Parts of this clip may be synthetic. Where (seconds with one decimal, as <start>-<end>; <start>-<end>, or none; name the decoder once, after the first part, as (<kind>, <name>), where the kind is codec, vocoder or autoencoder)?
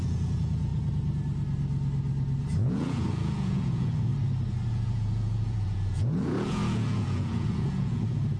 0.0-0.7 (vocoder, Vocos); 2.7-4.1; 4.7-8.4